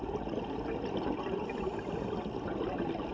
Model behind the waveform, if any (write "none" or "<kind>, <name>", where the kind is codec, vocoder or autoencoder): none